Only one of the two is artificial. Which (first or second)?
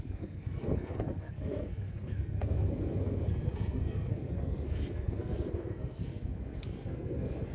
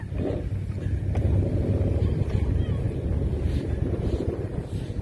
first